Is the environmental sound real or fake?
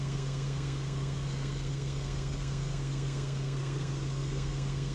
fake